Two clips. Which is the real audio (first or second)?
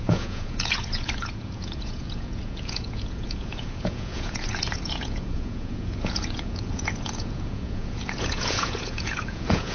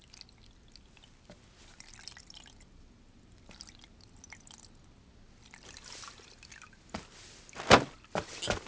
second